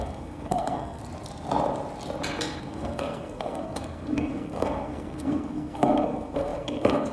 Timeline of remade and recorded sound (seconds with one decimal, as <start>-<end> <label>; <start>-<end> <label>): 0.0-1.0 remade; 1.0-2.6 recorded; 2.6-7.1 remade